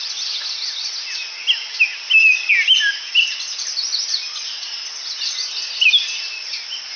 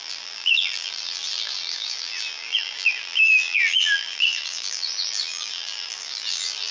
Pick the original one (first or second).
first